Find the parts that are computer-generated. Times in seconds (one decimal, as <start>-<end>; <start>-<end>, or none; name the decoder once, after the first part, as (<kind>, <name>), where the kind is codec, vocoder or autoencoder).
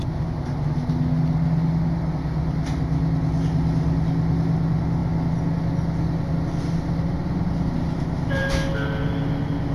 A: none